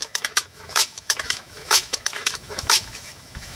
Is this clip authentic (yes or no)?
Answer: no